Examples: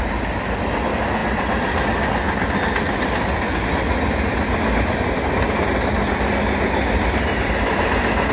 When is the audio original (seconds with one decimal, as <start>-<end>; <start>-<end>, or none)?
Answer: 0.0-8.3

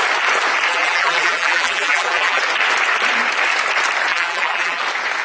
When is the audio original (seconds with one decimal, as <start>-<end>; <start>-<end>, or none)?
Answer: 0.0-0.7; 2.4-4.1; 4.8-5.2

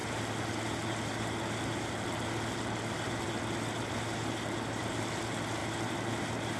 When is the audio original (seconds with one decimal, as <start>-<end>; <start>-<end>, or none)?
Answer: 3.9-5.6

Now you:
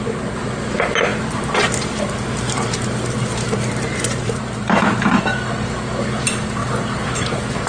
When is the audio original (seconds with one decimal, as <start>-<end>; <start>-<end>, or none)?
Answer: 0.0-1.1; 5.2-6.6

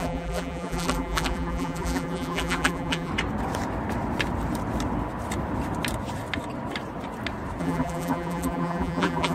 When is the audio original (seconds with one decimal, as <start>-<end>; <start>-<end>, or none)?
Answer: 3.1-7.6

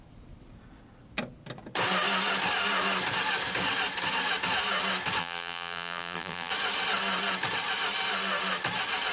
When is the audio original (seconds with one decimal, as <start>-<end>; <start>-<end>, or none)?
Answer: 0.0-5.2; 6.5-9.1

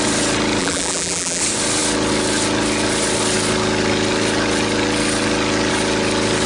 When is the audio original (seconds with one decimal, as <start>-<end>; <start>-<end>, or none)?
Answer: 0.0-0.6; 1.4-6.5